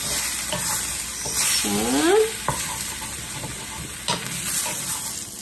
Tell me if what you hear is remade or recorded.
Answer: recorded